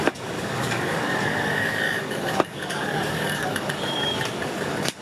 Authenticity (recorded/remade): remade